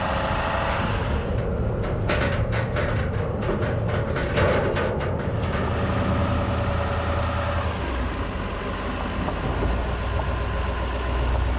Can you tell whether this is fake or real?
real